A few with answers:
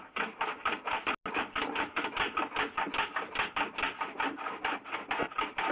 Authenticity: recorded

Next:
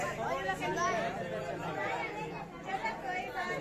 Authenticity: recorded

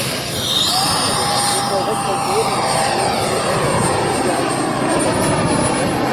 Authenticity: recorded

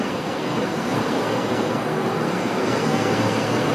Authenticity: remade